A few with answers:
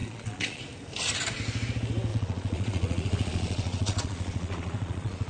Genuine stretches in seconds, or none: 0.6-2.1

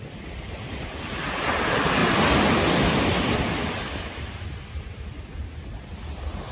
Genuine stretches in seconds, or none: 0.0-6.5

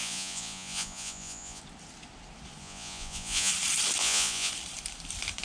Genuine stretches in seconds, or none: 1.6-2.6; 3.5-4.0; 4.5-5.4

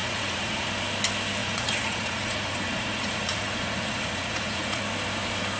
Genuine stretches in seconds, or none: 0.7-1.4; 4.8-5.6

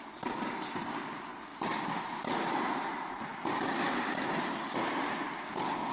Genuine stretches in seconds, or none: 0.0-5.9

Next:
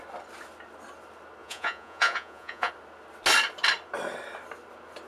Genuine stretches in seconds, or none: 0.0-1.4; 2.7-5.1

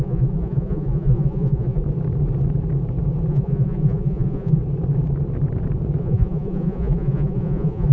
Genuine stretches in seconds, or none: 1.8-3.3; 4.6-6.0

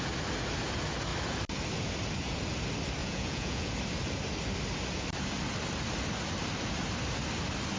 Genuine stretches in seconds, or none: 0.0-3.0; 3.7-7.8